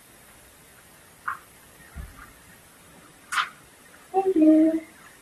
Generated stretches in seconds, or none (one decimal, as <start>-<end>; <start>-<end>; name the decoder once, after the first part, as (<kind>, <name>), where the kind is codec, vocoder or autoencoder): 0.0-0.7 (vocoder, BigVGAN v2); 2.7-5.2